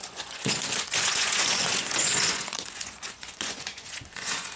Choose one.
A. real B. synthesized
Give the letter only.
B